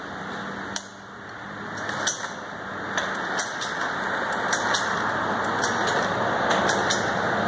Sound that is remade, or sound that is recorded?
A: recorded